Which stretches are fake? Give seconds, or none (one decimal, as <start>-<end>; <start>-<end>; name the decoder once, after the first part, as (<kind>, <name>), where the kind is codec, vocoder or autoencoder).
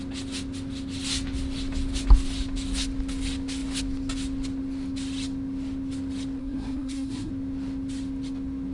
6.4-7.3 (codec, SNAC)